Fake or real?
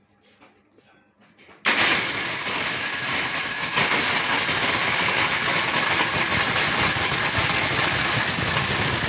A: real